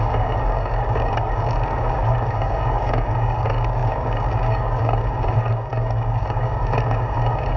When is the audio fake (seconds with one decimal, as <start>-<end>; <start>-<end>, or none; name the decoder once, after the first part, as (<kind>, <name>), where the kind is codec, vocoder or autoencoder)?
0.0-7.6 (codec, DAC)